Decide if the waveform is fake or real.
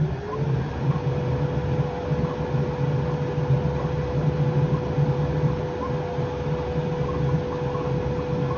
real